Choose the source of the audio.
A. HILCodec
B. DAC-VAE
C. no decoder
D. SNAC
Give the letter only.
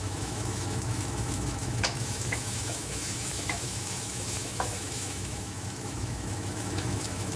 B